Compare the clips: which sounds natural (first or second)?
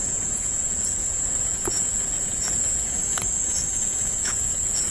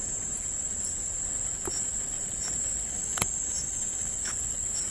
second